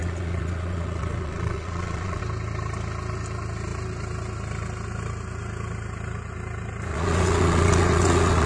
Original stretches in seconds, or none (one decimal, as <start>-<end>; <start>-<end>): 2.2-6.9